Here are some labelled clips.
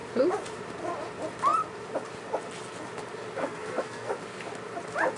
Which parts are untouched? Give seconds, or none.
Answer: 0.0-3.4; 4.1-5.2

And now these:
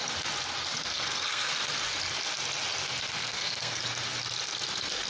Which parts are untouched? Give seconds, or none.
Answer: 0.0-0.9; 1.5-3.2; 3.8-5.1

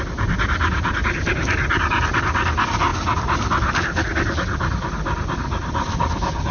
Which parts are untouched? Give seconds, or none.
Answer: 0.0-6.5

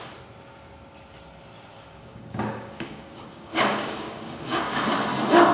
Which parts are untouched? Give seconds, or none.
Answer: 0.0-1.7; 4.9-5.5

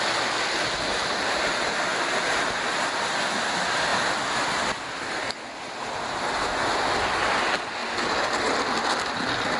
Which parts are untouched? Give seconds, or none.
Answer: 0.0-0.9; 1.4-1.9; 2.7-7.8; 8.6-9.6

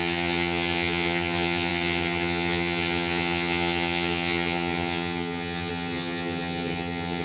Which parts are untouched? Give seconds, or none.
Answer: none

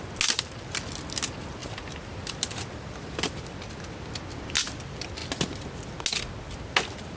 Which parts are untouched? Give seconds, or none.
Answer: 0.0-7.2

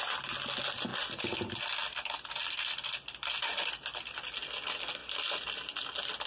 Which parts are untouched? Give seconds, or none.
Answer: 0.0-0.9; 2.3-5.0; 5.5-6.3